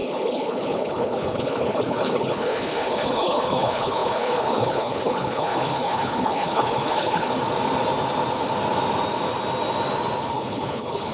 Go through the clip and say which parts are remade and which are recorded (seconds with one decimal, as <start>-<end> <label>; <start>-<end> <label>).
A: 0.0-7.3 remade; 7.3-10.3 recorded; 10.3-11.1 remade